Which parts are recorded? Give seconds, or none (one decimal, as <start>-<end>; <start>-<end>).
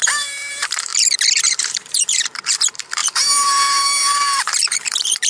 0.9-1.5